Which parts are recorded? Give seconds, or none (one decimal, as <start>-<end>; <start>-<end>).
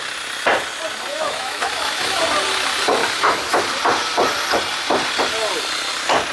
0.0-1.1; 2.2-3.0; 3.6-6.3